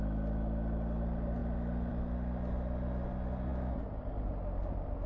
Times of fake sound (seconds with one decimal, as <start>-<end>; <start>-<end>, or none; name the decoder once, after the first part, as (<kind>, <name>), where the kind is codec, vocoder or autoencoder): none